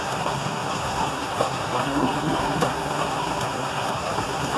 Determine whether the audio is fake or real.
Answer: fake